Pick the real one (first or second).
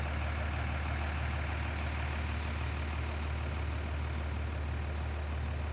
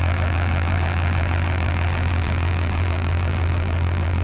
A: first